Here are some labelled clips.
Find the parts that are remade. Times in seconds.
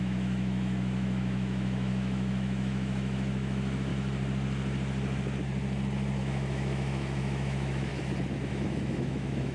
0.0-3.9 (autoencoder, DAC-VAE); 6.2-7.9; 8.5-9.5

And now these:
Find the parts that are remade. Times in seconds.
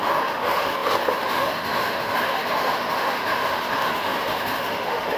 0.0-5.2 (autoencoder, DAC-VAE)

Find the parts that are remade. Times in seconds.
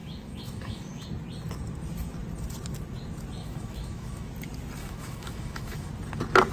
0.0-1.1 (autoencoder, DAC-VAE); 3.4-4.3; 4.8-5.9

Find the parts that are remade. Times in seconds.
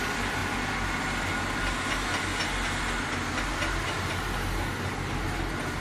none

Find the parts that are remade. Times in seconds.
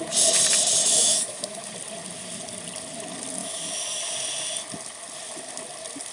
0.8-1.7 (autoencoder, DAC-VAE); 3.4-4.0